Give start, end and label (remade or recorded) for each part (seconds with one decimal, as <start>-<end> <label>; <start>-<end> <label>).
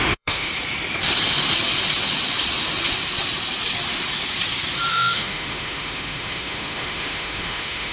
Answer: 0.0-0.5 remade; 0.5-4.9 recorded; 4.9-7.9 remade